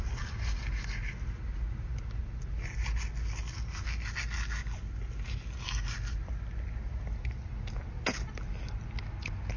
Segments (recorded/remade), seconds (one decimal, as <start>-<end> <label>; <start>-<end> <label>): 0.0-9.6 recorded